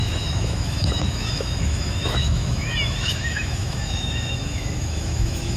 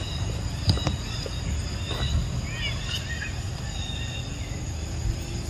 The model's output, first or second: first